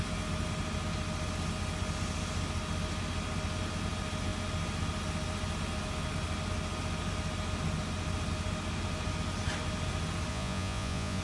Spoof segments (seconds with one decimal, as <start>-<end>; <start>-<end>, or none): 10.3-11.2